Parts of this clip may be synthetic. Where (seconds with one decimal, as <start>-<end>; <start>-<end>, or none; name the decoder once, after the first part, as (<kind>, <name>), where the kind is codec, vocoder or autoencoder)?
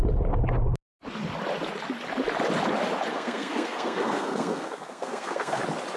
3.1-5.6 (codec, SNAC)